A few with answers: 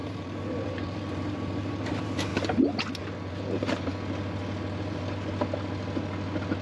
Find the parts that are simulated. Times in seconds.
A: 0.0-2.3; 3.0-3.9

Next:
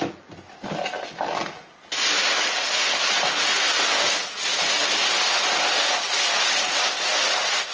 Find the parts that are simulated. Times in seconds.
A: none

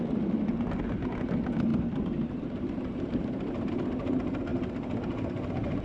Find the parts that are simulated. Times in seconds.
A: 1.7-3.7

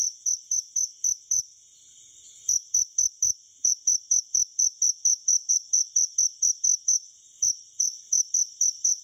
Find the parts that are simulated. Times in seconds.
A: 0.0-9.0

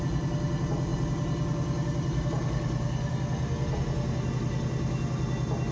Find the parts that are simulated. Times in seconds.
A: none

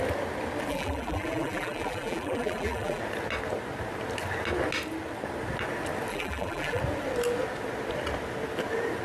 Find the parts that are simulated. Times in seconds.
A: 0.7-3.0; 6.1-6.8

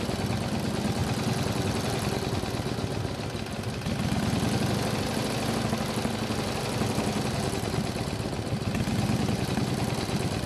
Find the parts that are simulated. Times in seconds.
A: none